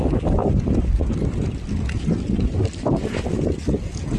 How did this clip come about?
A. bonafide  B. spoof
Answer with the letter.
A